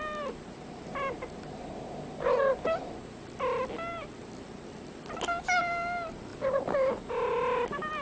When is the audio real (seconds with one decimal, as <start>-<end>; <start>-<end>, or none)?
0.0-8.0